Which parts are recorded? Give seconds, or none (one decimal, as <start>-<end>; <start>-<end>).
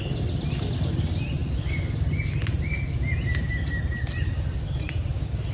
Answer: 0.0-5.5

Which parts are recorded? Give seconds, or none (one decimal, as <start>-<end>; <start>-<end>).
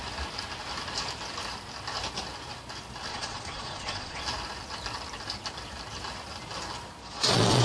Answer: 0.0-3.1; 4.2-7.0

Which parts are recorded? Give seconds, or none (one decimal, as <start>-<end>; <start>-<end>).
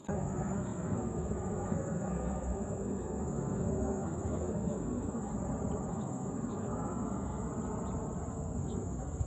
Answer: 5.3-5.9; 7.5-8.3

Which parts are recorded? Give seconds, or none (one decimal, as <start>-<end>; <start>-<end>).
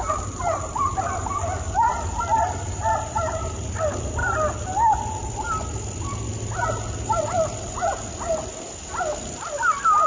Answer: 0.0-10.1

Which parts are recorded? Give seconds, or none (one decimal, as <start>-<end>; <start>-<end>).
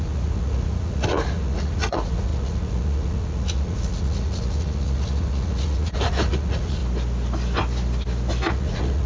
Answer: 6.8-8.5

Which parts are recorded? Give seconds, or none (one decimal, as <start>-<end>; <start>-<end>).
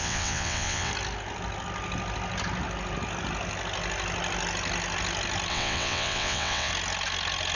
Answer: 0.9-5.5; 6.7-7.6